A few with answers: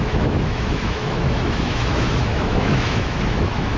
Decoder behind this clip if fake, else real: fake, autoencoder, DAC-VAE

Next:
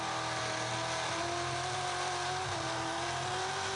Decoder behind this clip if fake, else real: real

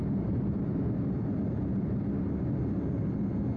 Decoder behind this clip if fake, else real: real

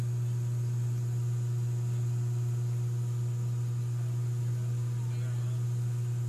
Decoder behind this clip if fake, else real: real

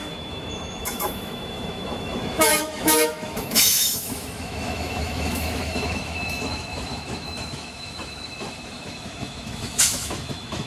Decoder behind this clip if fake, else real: fake, autoencoder, DAC-VAE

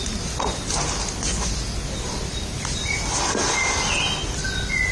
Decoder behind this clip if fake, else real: real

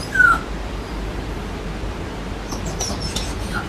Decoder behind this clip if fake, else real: real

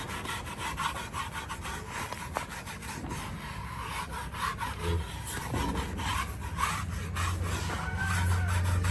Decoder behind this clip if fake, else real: real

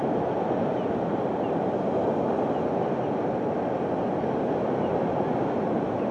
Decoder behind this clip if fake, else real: real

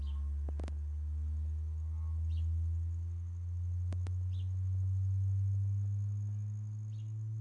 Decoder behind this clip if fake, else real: real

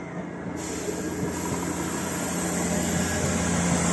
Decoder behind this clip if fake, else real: real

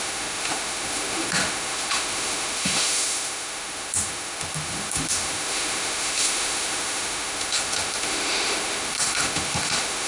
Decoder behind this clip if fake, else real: fake, autoencoder, DAC-VAE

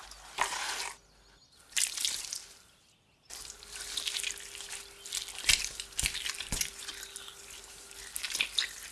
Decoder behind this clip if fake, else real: real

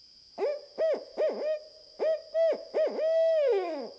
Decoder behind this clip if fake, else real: fake, autoencoder, DAC-VAE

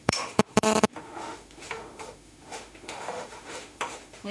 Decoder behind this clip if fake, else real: fake, autoencoder, DAC-VAE